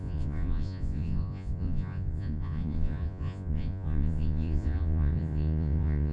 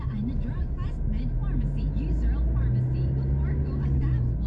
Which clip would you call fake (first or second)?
first